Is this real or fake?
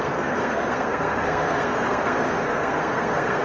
fake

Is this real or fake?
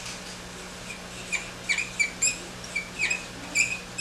real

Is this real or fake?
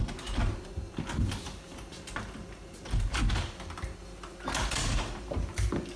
real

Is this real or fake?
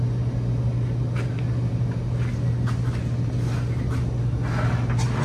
real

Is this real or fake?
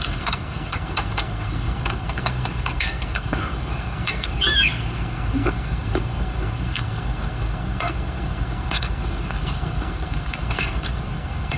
fake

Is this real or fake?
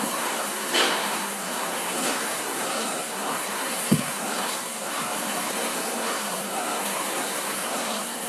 fake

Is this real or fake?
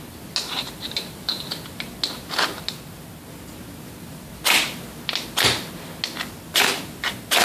real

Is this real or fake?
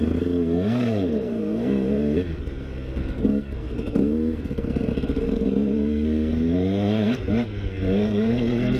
fake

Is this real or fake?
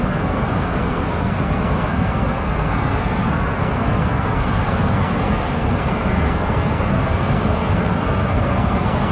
fake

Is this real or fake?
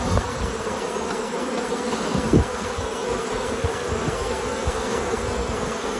fake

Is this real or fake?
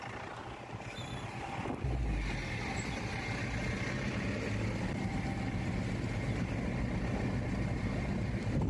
real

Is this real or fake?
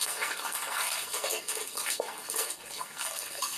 fake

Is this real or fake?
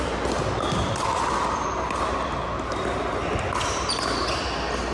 real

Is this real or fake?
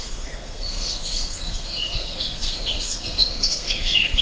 fake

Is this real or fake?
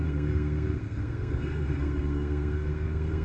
fake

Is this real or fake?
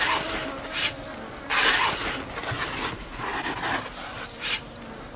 real